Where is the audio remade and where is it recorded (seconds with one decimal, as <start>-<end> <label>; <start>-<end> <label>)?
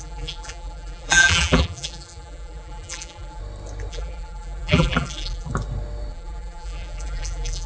0.0-3.4 remade; 3.4-3.9 recorded; 3.9-5.5 remade; 5.5-6.1 recorded; 6.1-7.7 remade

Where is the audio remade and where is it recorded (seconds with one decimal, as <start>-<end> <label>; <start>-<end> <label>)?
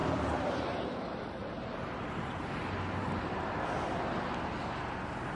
0.0-3.2 remade; 3.2-5.4 recorded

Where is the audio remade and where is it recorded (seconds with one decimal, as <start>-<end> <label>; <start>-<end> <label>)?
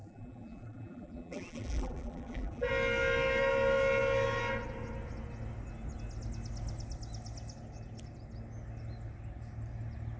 0.0-2.7 remade; 2.7-10.2 recorded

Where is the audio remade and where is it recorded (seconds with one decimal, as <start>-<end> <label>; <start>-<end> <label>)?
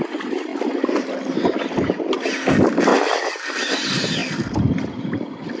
0.0-0.5 recorded; 0.5-2.1 remade; 2.1-2.9 recorded; 2.9-3.8 remade; 3.8-4.2 recorded; 4.2-5.6 remade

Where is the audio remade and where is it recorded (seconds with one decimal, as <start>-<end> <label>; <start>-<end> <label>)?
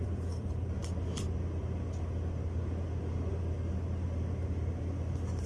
0.0-0.8 remade; 0.8-3.3 recorded; 3.3-5.5 remade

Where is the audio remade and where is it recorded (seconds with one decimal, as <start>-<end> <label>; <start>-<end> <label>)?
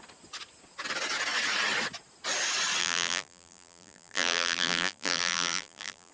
0.0-2.8 recorded; 2.8-6.1 remade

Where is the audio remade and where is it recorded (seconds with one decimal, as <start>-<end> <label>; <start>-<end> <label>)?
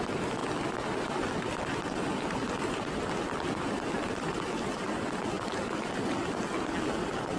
0.0-7.4 recorded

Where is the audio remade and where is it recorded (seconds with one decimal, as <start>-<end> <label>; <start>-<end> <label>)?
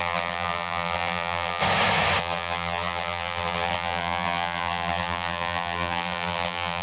0.0-1.6 remade; 1.6-2.2 recorded; 2.2-6.8 remade